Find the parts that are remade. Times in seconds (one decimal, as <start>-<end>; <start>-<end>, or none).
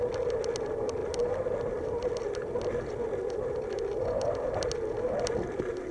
none